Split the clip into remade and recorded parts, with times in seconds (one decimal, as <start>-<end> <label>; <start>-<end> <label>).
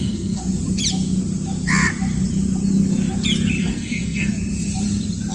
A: 0.0-0.4 remade; 0.4-3.6 recorded; 3.6-4.3 remade; 4.3-5.3 recorded